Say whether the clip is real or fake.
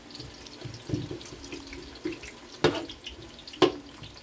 real